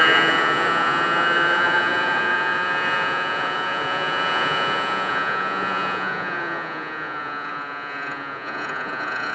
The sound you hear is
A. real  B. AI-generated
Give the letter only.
B